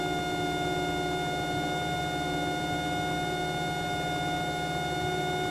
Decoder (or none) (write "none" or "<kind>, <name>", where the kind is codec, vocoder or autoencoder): none